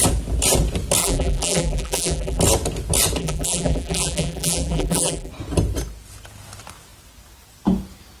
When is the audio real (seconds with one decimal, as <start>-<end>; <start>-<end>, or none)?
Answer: 0.0-1.0; 2.4-3.2; 5.3-8.2